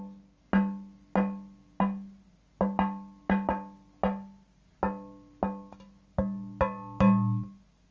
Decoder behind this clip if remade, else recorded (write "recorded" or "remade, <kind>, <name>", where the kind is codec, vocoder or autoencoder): recorded